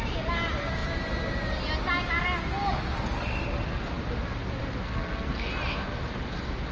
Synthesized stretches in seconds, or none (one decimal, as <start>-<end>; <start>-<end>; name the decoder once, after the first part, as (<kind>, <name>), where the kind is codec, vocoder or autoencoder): 4.8-5.5 (codec, SNAC)